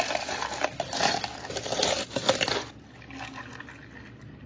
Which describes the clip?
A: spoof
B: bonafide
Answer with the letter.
B